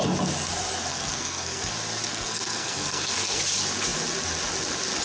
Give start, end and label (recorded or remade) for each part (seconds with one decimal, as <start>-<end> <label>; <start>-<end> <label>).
0.0-0.9 recorded; 0.9-1.7 remade; 1.7-2.1 recorded; 2.1-3.4 remade; 3.4-5.0 recorded